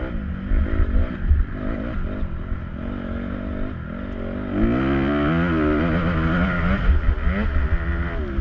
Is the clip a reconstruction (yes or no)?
no